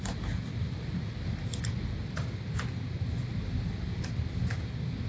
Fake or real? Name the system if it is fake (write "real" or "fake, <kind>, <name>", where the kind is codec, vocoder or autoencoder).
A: real